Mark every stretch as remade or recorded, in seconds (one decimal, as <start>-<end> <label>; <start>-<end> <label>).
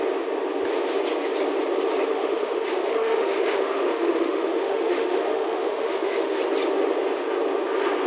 0.0-2.1 recorded; 2.1-6.4 remade; 6.4-8.1 recorded